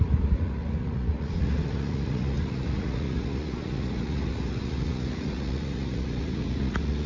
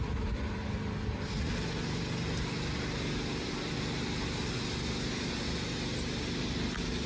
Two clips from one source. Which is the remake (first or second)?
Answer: first